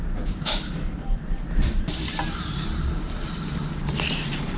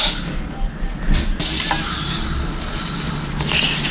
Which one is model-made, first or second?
first